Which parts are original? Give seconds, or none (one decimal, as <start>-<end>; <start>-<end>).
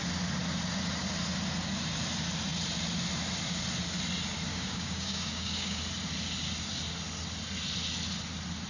0.0-4.5; 5.8-8.7